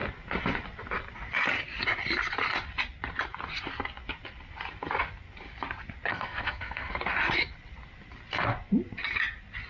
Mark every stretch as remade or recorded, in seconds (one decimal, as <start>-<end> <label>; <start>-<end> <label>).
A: 0.0-6.1 recorded; 6.1-6.9 remade; 6.9-9.7 recorded